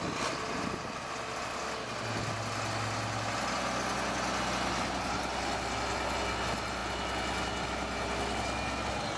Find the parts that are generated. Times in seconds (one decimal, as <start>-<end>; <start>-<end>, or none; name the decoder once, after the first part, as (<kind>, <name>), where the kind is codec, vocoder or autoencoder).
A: none